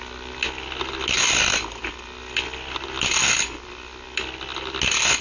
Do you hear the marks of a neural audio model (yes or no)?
no